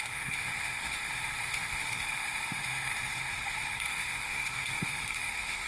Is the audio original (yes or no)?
no